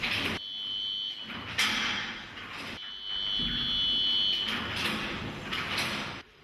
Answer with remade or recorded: recorded